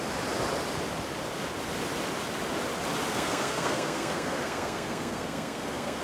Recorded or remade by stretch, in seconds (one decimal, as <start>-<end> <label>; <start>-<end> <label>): 0.0-3.1 recorded; 3.1-6.0 remade